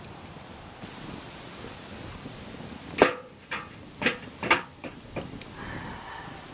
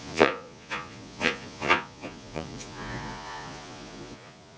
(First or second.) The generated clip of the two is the second